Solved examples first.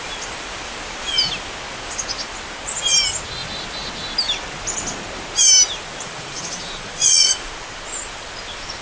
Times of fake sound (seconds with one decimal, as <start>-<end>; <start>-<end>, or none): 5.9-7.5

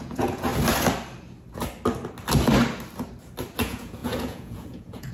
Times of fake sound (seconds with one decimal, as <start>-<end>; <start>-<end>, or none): 0.0-0.5; 3.6-5.1

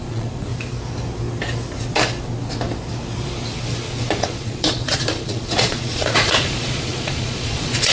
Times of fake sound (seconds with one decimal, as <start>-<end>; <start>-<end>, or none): 0.0-0.5; 4.2-7.9

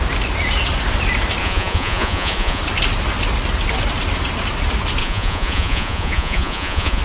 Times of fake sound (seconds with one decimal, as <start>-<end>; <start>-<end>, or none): 1.4-2.6; 5.0-7.0

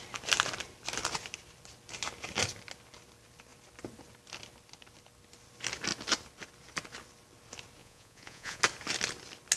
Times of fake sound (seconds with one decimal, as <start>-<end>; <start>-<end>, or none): 7.8-8.6